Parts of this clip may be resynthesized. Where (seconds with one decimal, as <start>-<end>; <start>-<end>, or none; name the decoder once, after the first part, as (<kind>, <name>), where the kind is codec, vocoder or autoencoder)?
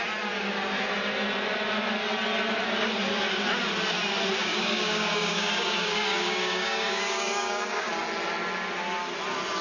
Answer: 4.4-7.9 (codec, DAC)